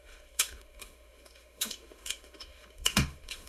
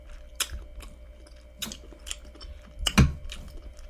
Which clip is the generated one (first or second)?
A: first